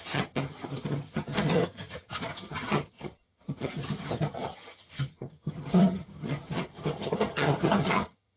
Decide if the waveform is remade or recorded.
remade